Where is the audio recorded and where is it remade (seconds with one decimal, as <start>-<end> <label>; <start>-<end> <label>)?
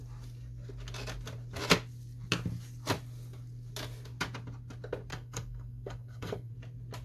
0.0-5.1 recorded; 5.1-6.5 remade; 6.5-7.0 recorded